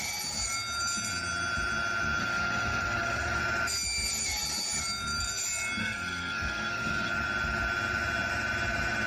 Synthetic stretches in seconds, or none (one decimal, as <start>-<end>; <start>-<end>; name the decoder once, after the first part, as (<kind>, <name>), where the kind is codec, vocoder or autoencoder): 2.2-3.4 (codec, SNAC); 5.8-7.1